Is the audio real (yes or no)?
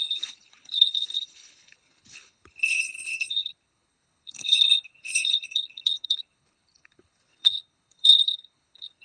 no